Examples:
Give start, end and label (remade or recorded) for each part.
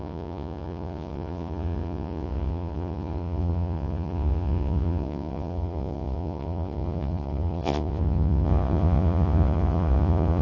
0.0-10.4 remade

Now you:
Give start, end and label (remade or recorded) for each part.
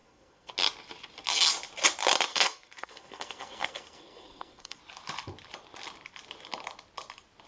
0.0-0.5 remade; 0.5-2.3 recorded; 2.3-4.8 remade; 4.8-7.5 recorded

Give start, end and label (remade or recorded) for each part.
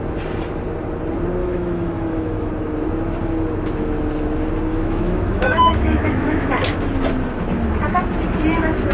0.0-1.4 recorded; 1.4-2.5 remade; 2.5-4.7 recorded; 4.7-6.5 remade; 6.5-8.9 recorded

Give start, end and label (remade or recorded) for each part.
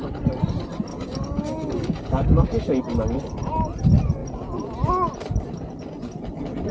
0.0-0.9 recorded; 0.9-2.8 remade; 2.8-6.7 recorded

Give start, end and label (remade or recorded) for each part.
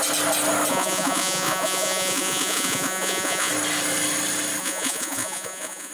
0.0-0.7 recorded; 0.7-3.5 remade; 3.5-4.6 recorded; 4.6-5.9 remade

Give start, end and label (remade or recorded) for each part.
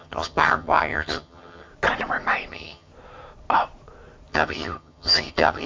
0.0-1.7 remade; 1.7-2.5 recorded; 2.5-2.9 remade; 2.9-4.3 recorded; 4.3-5.7 remade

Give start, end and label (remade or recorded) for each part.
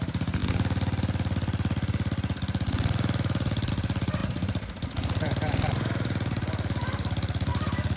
0.0-0.4 remade; 0.4-3.7 recorded; 3.7-8.0 remade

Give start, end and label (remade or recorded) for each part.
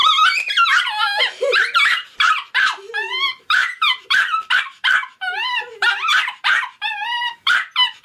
0.0-1.2 recorded; 1.2-8.0 remade